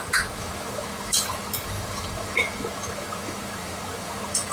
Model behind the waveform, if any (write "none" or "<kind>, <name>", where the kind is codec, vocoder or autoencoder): autoencoder, DAC-VAE